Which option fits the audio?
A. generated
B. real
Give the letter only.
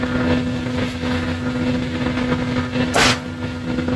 B